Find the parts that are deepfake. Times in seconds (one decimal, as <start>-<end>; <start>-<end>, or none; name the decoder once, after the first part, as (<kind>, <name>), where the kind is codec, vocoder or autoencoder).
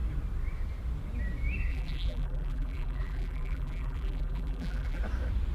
1.7-5.0 (vocoder, BigVGAN v2)